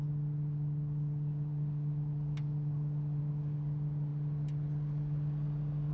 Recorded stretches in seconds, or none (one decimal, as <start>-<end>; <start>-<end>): 0.0-5.9